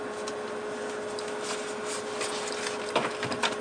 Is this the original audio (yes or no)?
yes